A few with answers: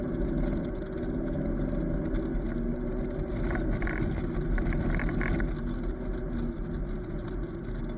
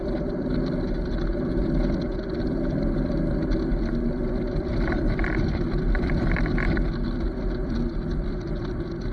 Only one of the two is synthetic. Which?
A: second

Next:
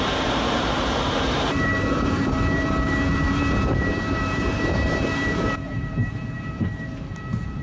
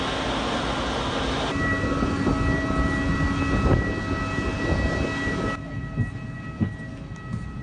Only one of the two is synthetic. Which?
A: first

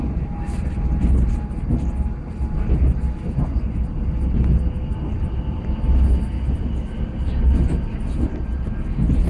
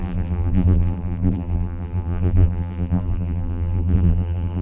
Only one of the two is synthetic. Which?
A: second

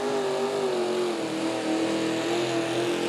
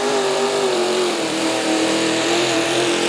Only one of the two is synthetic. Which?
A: second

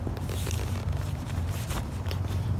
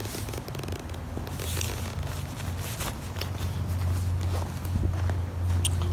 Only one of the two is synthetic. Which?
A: first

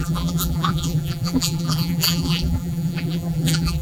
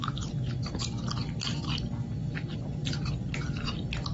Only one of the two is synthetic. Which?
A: first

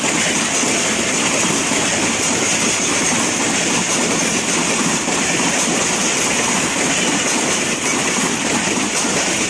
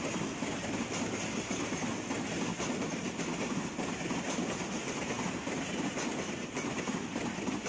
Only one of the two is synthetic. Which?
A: first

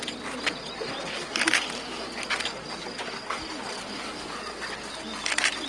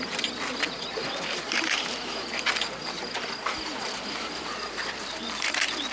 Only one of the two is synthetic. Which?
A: second